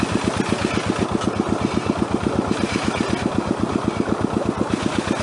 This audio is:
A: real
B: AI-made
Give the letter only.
A